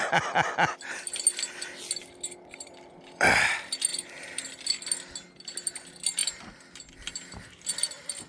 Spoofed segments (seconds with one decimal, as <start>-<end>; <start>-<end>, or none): none